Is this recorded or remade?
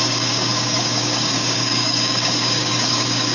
remade